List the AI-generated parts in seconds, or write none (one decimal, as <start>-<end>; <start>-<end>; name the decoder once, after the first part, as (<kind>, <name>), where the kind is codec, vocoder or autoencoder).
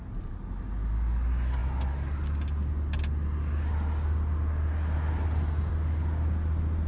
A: none